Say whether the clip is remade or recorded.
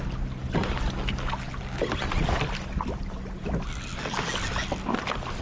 recorded